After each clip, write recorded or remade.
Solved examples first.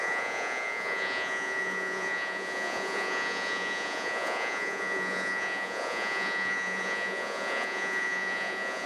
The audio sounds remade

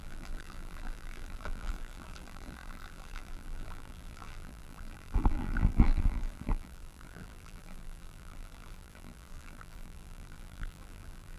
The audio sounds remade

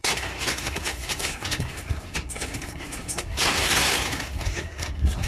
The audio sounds remade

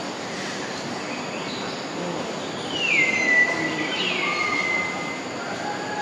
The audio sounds recorded